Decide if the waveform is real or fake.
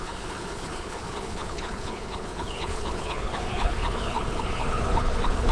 fake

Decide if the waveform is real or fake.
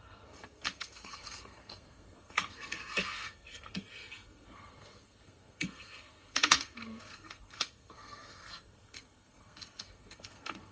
fake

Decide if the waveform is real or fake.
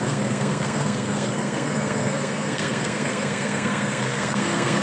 fake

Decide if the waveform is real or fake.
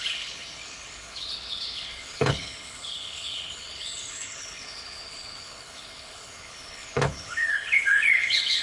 fake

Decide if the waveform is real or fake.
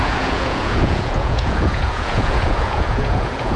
fake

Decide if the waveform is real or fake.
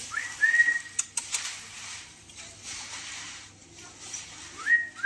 real